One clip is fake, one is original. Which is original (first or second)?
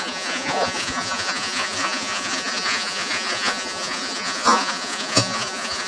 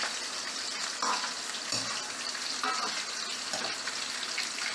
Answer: second